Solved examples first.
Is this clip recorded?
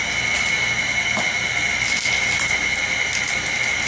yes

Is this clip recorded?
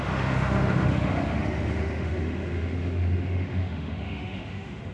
no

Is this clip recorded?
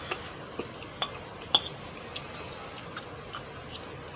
yes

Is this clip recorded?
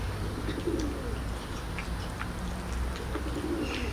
yes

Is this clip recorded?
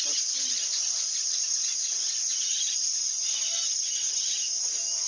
yes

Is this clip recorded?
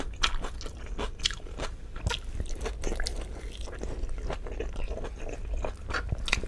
yes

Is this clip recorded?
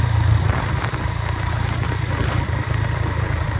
no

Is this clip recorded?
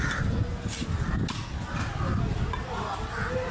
yes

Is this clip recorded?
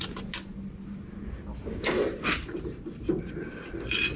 yes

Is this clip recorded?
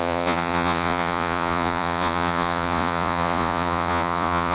no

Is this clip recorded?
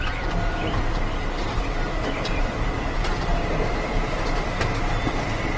no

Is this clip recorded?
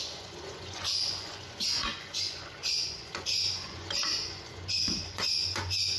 no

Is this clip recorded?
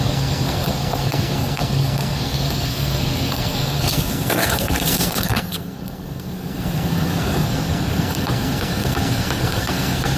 no